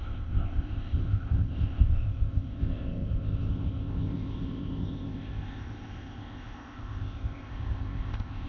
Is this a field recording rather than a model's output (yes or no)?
no